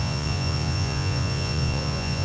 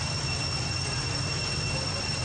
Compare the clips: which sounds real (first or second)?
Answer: second